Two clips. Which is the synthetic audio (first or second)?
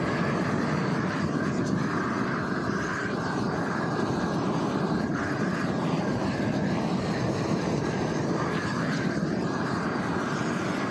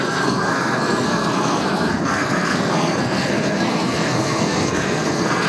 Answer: second